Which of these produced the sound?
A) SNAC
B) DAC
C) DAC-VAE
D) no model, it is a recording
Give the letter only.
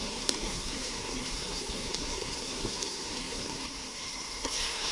A